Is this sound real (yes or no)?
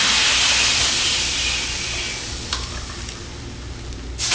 yes